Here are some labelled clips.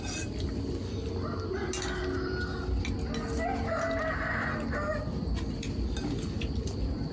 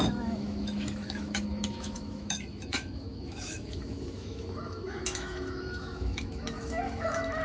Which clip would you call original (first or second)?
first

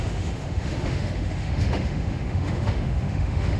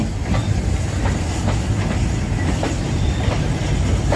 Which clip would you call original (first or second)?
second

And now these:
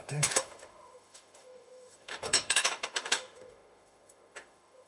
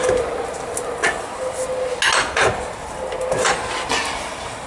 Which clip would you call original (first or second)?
second